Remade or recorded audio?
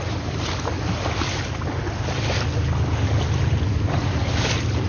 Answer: recorded